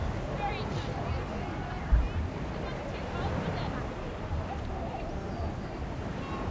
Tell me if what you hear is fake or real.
real